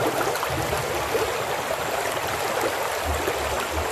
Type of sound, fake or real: real